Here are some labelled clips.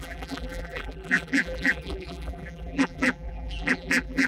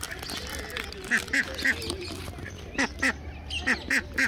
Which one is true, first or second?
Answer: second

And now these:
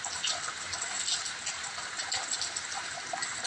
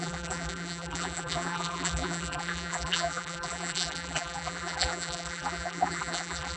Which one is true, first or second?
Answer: first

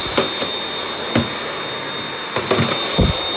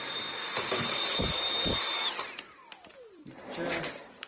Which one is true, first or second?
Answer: first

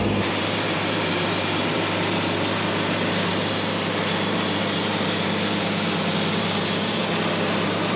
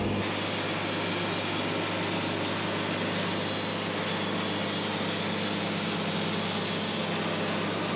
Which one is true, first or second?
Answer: second